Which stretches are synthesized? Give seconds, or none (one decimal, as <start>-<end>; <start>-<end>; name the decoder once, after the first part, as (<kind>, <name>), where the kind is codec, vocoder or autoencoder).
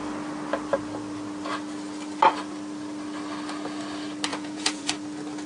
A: 4.3-4.9 (vocoder, Vocos)